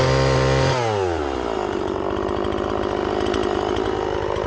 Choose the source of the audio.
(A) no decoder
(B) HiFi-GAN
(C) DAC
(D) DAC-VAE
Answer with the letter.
A